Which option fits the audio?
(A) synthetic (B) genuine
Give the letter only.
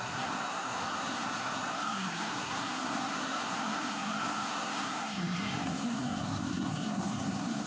A